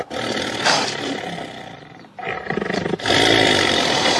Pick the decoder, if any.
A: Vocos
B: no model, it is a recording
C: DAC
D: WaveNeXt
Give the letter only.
B